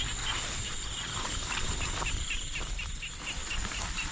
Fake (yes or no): no